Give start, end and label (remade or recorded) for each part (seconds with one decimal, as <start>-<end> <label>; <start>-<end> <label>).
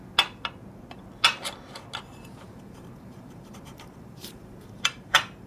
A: 0.0-2.1 recorded; 2.1-5.5 remade